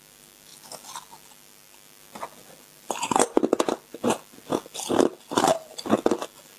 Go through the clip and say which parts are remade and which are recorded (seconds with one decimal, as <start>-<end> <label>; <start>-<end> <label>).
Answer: 0.0-6.6 recorded